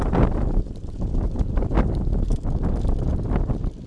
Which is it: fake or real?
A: real